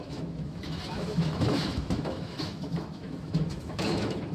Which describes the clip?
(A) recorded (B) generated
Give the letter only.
B